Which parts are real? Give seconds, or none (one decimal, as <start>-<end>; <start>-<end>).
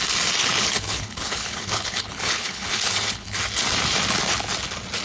0.0-0.4; 3.4-5.0